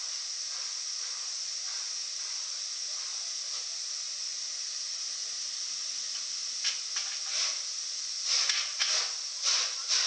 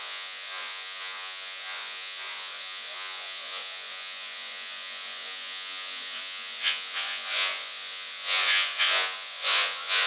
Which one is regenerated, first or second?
second